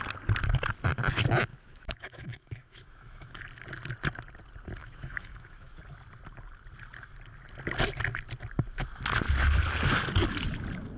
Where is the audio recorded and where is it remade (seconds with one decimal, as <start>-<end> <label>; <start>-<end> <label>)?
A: 0.0-1.5 recorded; 1.5-3.4 remade; 3.4-4.8 recorded; 4.8-5.8 remade; 5.8-11.0 recorded